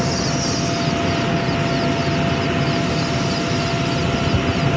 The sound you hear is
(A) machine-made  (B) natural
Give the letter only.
B